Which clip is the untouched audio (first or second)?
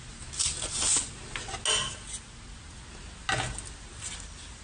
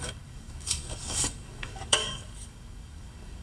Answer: first